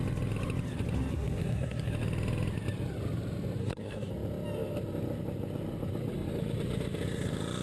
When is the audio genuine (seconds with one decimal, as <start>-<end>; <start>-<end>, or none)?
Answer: 0.0-1.1; 1.9-3.6; 4.1-7.6